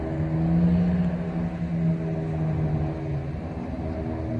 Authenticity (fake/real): real